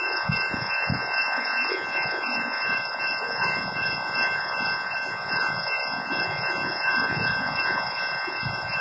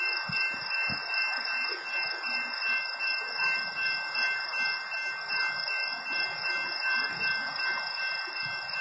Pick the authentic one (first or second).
second